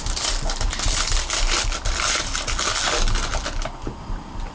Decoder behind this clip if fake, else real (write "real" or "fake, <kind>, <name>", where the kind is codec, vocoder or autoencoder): real